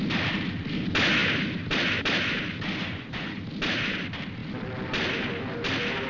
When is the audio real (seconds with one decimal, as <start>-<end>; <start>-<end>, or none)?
0.0-2.8; 3.4-6.1